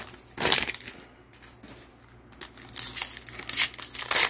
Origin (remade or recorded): recorded